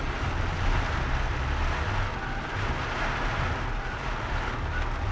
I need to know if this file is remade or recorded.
recorded